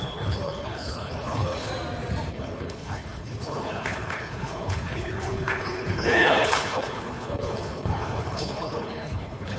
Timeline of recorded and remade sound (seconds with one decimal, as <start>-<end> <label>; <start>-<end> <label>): 0.0-1.7 remade; 1.7-2.3 recorded; 2.3-9.6 remade